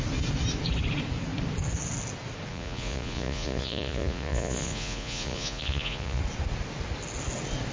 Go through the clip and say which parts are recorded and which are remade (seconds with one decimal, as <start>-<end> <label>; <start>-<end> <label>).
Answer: 0.0-2.5 recorded; 2.5-6.2 remade; 6.2-7.7 recorded